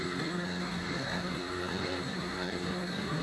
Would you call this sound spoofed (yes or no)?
yes